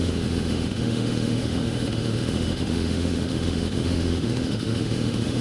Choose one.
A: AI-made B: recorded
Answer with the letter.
A